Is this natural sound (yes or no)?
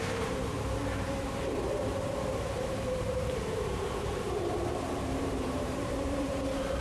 no